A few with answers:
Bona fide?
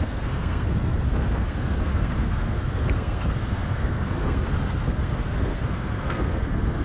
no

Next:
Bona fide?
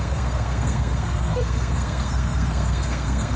no